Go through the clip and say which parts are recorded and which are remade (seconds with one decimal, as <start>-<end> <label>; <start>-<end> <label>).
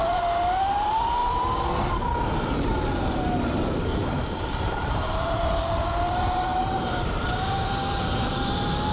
0.0-3.9 recorded; 3.9-5.6 remade; 5.6-6.5 recorded; 6.5-7.6 remade; 7.6-8.9 recorded